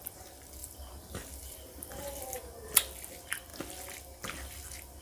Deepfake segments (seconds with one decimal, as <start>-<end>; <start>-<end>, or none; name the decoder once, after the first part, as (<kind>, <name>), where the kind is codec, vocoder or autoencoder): 0.6-2.7 (vocoder, BigVGAN v2)